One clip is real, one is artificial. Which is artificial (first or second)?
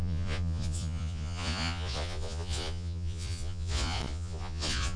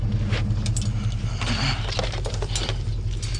first